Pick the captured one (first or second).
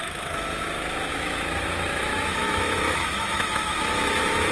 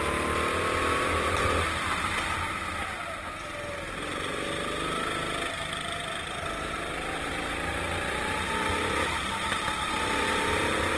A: second